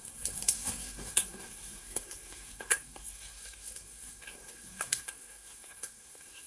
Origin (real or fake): fake